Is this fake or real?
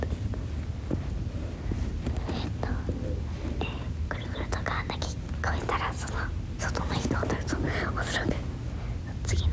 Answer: real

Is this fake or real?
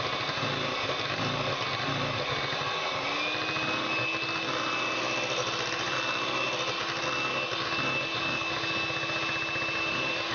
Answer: real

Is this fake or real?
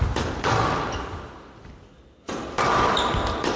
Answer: fake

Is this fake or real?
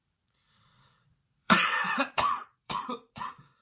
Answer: fake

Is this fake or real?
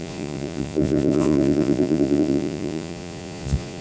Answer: fake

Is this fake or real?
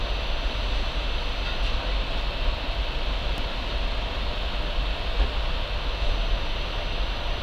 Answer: real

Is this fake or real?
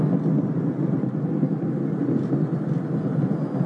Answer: real